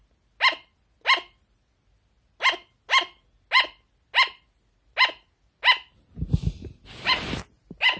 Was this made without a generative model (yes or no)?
yes